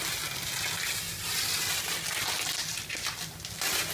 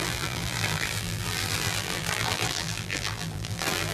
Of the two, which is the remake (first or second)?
second